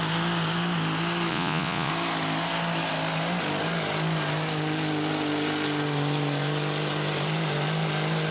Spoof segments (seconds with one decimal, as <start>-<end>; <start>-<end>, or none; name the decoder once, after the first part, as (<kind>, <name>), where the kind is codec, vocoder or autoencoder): 1.3-1.9 (vocoder, Vocos)